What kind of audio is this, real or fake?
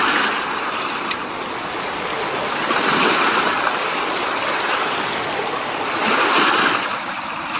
real